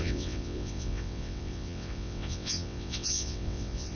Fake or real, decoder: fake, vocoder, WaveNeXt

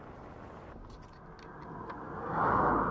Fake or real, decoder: real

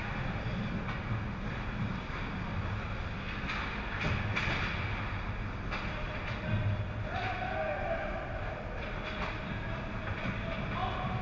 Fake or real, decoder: real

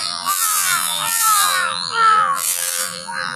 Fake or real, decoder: fake, vocoder, BigVGAN v2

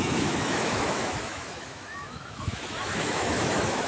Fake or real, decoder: fake, autoencoder, DAC-VAE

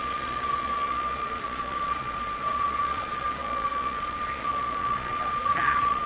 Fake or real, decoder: fake, vocoder, Vocos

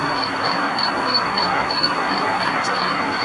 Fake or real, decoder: fake, codec, SNAC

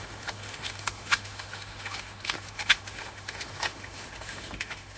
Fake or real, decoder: fake, autoencoder, DAC-VAE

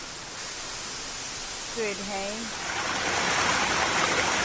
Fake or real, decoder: real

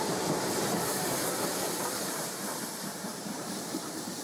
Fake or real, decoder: fake, vocoder, BigVGAN v2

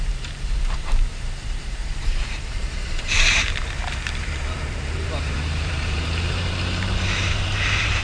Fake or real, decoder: fake, vocoder, BigVGAN v2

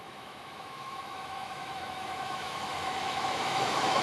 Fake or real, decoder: fake, autoencoder, DAC-VAE